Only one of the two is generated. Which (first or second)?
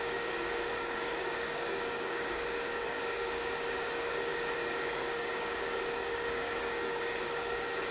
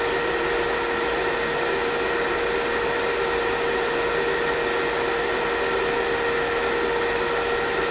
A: first